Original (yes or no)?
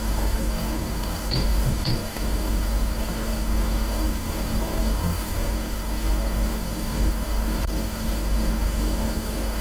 no